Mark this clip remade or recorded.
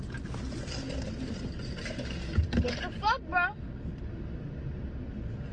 recorded